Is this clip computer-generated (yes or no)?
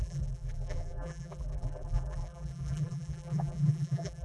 yes